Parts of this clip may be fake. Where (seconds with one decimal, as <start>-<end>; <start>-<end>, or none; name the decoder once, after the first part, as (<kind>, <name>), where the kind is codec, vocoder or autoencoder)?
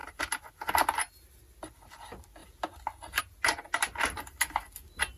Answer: none